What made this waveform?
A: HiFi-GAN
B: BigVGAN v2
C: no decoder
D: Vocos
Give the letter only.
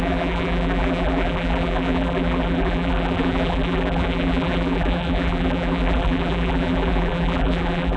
B